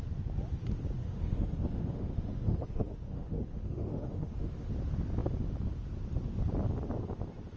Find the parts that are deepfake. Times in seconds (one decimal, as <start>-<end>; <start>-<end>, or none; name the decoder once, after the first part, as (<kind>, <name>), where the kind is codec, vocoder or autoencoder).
1.0-4.7 (autoencoder, DAC-VAE)